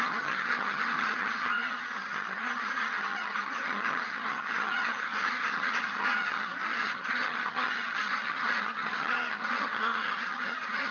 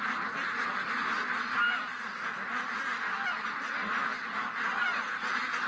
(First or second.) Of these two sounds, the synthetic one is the first